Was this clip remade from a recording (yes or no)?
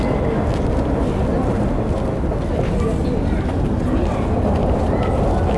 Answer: no